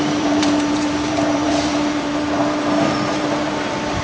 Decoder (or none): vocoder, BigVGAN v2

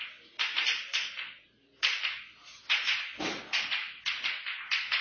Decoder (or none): none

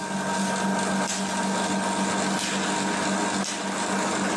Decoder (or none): none